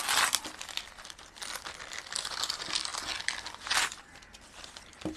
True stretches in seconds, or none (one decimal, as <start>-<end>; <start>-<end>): 0.0-5.2